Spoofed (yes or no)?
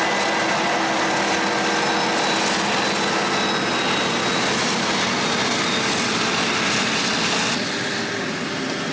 no